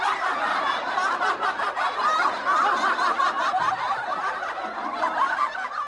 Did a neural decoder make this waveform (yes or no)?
no